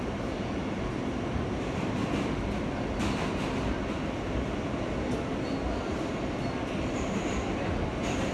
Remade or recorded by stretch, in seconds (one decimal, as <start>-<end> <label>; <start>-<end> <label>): 0.0-2.0 remade; 2.0-6.9 recorded; 6.9-8.3 remade